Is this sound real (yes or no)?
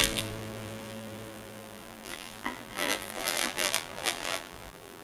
no